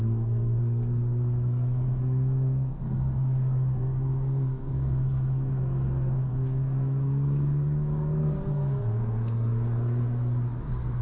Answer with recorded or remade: remade